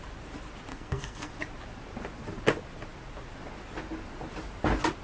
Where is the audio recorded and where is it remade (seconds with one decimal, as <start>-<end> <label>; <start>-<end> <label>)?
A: 0.0-0.7 recorded; 0.7-1.3 remade; 1.3-5.0 recorded